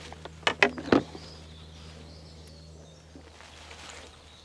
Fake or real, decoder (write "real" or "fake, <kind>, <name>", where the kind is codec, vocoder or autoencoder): real